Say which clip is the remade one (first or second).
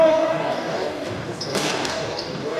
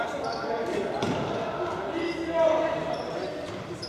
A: first